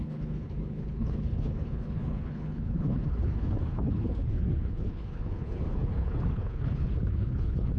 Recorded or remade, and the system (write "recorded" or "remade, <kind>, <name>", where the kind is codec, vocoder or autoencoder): remade, codec, HILCodec